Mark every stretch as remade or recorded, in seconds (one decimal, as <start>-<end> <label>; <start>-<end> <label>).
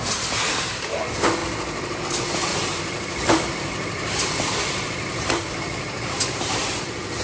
0.0-1.4 recorded; 1.4-2.0 remade; 2.0-2.5 recorded; 2.5-6.8 remade; 6.8-7.2 recorded